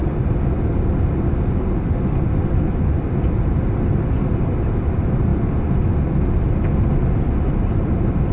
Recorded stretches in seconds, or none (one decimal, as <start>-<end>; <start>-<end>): 0.0-8.3